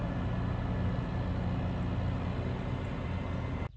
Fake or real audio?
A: real